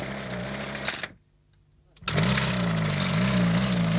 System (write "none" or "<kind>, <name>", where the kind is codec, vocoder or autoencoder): none